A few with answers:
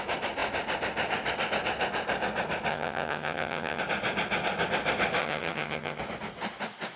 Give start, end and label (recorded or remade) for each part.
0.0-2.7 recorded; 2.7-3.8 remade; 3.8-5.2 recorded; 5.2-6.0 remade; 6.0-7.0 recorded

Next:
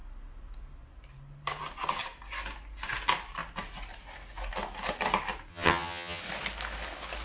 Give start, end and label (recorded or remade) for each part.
0.0-5.5 recorded; 5.5-6.2 remade; 6.2-7.2 recorded

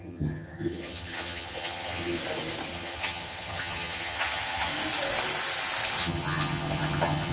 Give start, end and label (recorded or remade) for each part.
0.0-2.2 remade; 2.2-2.7 recorded; 2.7-4.7 remade; 4.7-6.0 recorded; 6.0-7.3 remade

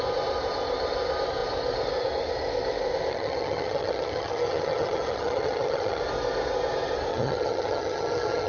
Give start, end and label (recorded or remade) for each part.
0.0-3.1 recorded; 3.1-6.0 remade; 6.0-7.1 recorded; 7.1-8.5 remade

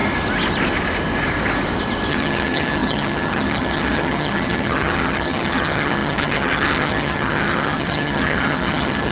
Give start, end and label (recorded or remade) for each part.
0.0-2.1 recorded; 2.1-9.1 remade

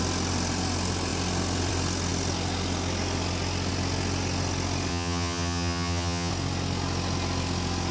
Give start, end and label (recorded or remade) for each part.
0.0-4.9 recorded; 4.9-6.3 remade; 6.3-7.9 recorded

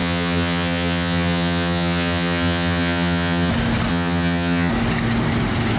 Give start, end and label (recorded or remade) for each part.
0.0-3.5 remade; 3.5-3.9 recorded; 3.9-4.7 remade; 4.7-5.8 recorded

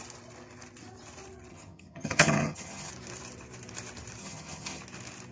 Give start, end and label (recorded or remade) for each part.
0.0-1.5 recorded; 1.5-2.9 remade; 2.9-4.2 recorded; 4.2-4.8 remade; 4.8-5.3 recorded